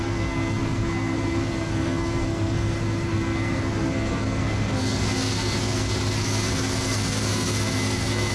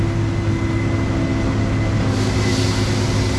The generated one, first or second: first